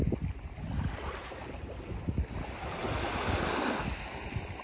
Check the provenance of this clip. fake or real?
real